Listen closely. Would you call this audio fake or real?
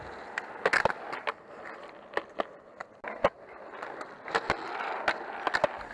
real